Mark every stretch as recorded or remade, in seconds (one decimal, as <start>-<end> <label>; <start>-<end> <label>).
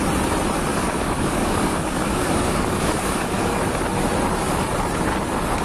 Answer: 0.0-0.7 recorded; 0.7-3.5 remade; 3.5-5.6 recorded